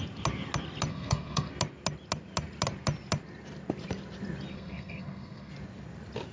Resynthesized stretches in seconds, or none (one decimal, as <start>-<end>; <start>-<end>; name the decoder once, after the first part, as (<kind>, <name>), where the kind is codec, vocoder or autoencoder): 0.9-1.5 (codec, SNAC); 4.5-5.5